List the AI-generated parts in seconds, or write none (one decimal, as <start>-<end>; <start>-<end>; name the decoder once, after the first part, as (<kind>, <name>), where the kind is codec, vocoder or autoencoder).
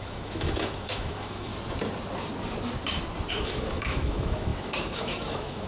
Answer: 0.0-1.5 (autoencoder, DAC-VAE); 3.3-5.7